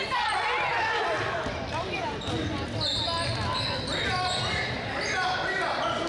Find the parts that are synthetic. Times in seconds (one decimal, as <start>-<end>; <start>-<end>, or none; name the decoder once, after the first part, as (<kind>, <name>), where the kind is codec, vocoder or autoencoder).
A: none